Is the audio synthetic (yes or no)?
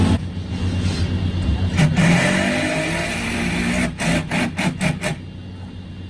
no